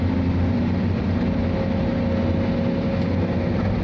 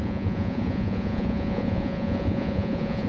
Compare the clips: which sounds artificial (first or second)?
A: second